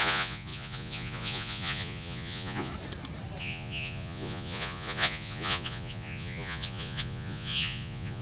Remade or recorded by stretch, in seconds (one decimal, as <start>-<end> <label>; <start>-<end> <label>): 0.0-2.7 remade; 2.7-3.4 recorded; 3.4-8.2 remade